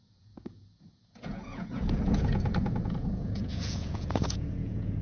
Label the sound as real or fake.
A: fake